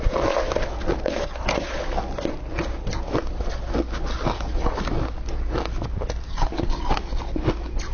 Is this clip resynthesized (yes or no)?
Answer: no